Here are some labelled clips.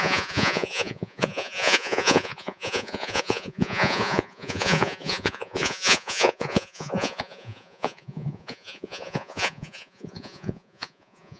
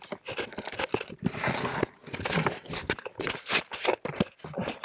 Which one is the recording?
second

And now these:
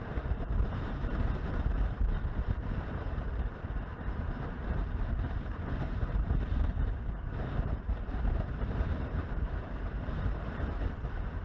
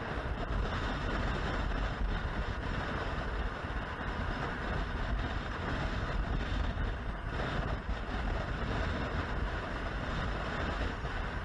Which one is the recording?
second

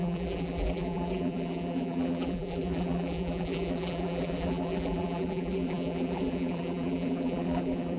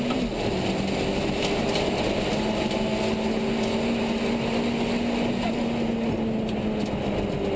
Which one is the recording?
second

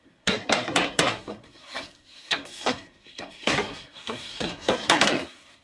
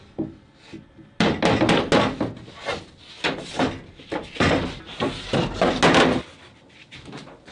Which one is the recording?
second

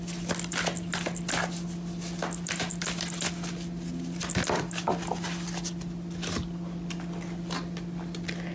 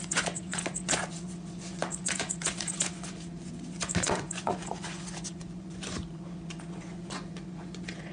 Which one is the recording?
first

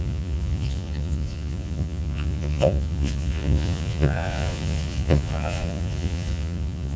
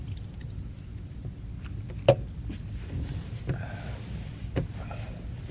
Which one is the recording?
second